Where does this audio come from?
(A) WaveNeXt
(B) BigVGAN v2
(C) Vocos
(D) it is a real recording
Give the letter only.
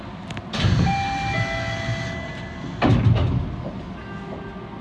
D